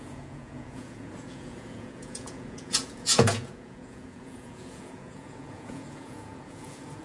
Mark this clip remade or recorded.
remade